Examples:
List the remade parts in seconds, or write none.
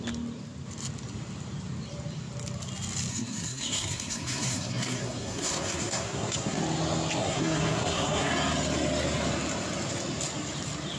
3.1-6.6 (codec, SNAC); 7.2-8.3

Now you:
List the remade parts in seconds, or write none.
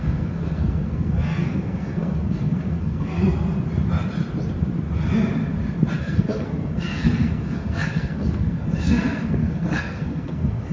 0.0-3.2 (codec, SNAC); 6.0-10.7